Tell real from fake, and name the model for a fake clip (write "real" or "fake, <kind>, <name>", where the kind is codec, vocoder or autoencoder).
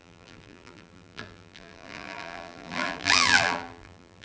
fake, vocoder, BigVGAN v2